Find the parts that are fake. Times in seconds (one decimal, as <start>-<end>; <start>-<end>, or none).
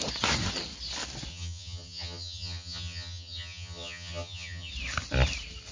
1.3-4.7